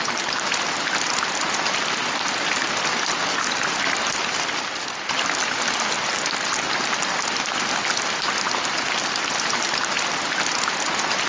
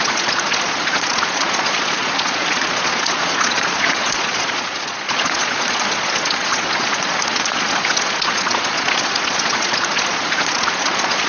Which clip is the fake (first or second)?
second